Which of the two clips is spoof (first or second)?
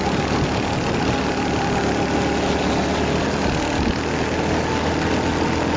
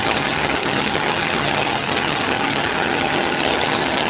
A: second